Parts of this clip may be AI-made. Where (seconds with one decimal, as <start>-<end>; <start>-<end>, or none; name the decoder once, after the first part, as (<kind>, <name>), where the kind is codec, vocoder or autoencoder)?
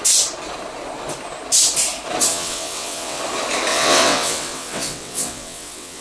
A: 2.3-3.2 (vocoder, WaveNeXt); 3.7-6.0